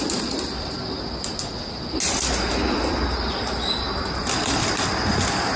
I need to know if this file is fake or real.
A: real